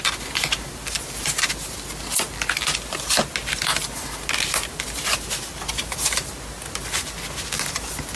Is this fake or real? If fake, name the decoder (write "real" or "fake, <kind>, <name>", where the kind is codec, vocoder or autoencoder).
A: real